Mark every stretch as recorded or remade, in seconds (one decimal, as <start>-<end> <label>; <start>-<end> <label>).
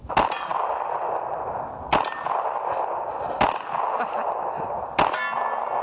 0.0-5.8 recorded